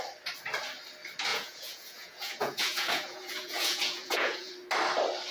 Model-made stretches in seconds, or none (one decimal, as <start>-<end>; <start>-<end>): 1.3-4.5